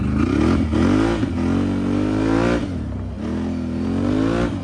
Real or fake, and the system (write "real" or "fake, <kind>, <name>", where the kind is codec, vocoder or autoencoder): real